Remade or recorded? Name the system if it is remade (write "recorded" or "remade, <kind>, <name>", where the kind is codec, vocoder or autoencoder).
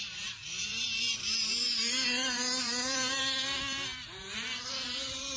remade, vocoder, BigVGAN v2